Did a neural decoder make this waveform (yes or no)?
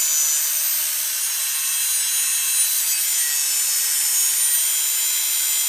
no